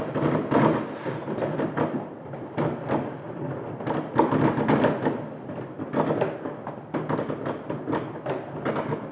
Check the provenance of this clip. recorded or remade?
recorded